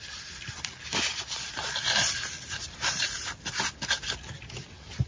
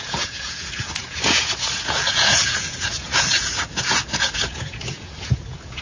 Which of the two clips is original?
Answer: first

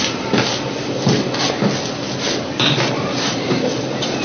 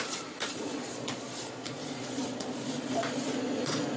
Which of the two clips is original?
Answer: first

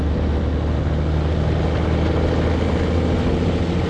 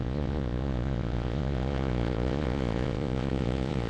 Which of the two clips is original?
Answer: first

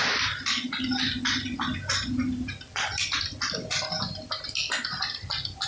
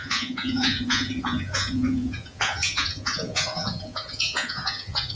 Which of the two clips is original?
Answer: first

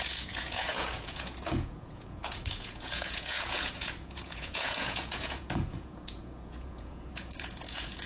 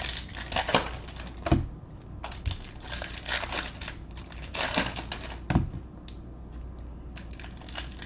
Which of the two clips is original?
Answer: second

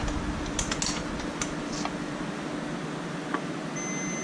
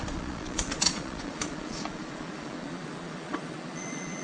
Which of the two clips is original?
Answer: first